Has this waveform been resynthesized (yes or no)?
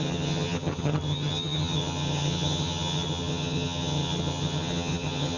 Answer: yes